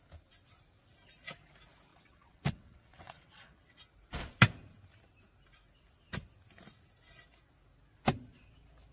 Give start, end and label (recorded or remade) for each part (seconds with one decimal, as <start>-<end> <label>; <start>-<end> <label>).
0.0-1.9 recorded; 1.9-3.8 remade; 3.8-8.9 recorded